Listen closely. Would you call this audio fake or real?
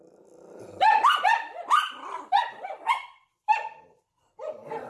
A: real